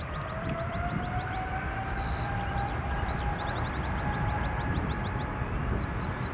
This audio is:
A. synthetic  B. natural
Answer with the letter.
A